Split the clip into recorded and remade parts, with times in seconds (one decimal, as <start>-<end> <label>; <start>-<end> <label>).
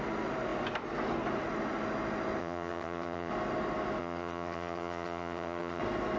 0.0-2.4 recorded; 2.4-3.3 remade; 3.3-4.0 recorded; 4.0-5.8 remade; 5.8-6.2 recorded